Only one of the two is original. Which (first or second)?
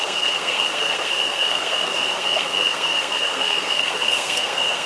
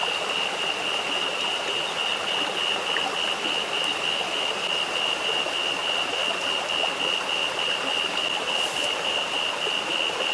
second